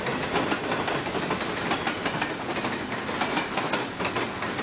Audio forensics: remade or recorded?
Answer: recorded